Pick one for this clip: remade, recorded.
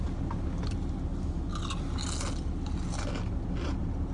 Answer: recorded